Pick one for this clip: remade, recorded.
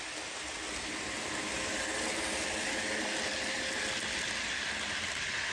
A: recorded